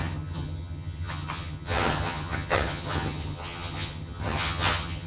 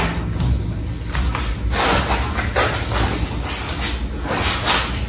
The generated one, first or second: first